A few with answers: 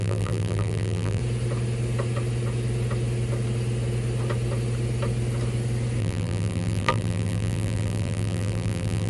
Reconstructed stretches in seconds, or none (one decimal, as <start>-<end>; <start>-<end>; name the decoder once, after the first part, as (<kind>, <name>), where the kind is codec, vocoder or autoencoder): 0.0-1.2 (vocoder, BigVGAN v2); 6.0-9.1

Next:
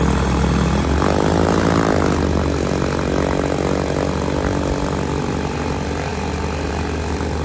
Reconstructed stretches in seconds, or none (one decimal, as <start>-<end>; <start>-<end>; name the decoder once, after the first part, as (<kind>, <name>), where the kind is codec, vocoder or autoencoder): none

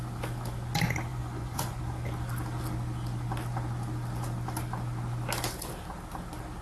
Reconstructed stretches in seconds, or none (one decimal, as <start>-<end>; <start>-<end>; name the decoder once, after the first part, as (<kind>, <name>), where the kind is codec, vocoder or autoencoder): 1.1-1.8 (vocoder, Vocos)

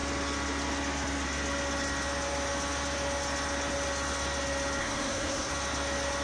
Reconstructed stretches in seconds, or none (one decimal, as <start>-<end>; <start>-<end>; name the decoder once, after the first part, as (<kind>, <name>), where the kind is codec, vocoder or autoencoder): 4.8-5.5 (codec, SNAC)

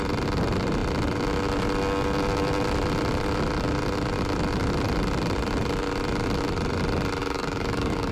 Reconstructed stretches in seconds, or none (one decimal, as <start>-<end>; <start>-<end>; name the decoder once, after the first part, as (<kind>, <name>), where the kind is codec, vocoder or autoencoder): 7.2-8.1 (codec, DAC)